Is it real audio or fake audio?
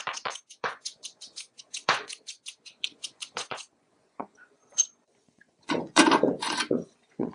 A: fake